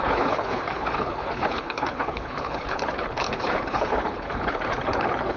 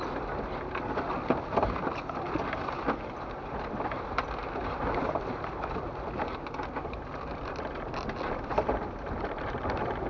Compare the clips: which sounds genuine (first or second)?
second